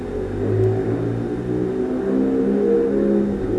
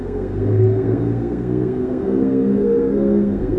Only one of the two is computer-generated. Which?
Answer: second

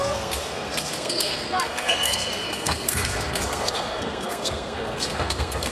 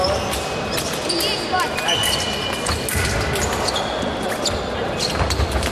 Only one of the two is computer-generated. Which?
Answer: first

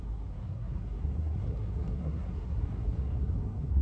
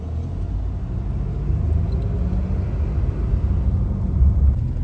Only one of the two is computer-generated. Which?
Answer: first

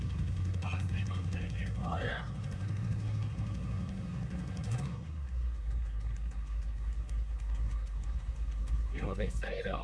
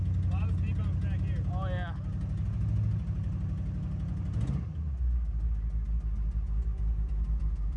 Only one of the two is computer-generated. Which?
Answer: first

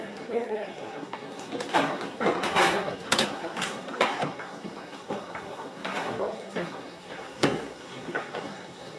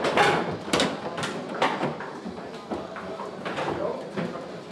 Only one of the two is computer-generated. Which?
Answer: first